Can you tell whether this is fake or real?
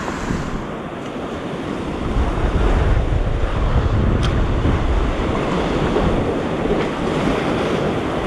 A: real